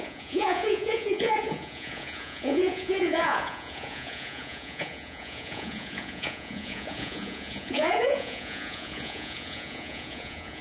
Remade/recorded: remade